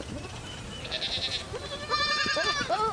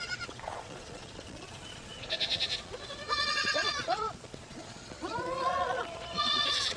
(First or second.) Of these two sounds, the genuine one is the first